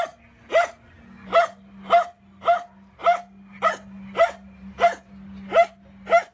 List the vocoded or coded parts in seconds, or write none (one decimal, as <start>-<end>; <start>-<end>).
none